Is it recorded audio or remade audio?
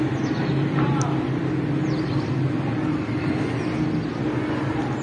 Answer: recorded